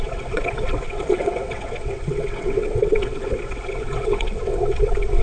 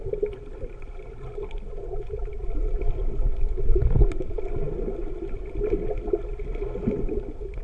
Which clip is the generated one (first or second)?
first